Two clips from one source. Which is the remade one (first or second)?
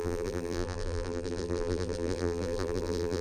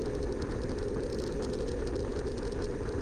first